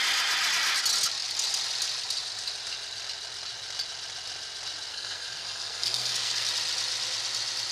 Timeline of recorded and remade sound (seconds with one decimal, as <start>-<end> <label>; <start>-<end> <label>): 0.0-4.9 recorded; 4.9-6.5 remade; 6.5-7.7 recorded